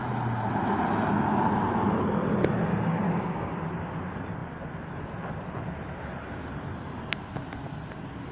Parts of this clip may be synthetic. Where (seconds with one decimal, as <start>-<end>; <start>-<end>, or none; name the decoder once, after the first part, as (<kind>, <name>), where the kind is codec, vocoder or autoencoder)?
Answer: 2.7-3.5 (codec, DAC)